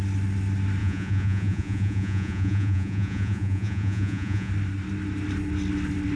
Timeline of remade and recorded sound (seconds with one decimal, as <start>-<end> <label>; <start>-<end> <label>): 0.0-0.8 recorded; 0.8-4.5 remade; 4.5-6.2 recorded